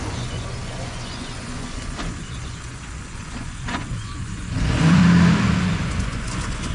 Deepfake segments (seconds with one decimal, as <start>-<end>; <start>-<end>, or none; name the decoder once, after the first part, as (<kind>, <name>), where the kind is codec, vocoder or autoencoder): 0.0-5.0 (vocoder, Vocos); 5.6-6.7